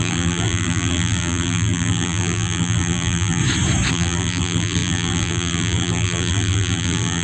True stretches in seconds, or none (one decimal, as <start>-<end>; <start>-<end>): 3.4-3.9